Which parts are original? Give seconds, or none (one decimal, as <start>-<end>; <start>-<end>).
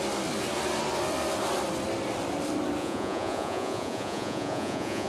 0.0-2.8